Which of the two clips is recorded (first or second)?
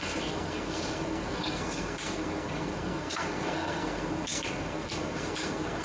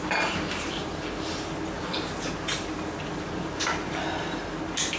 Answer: second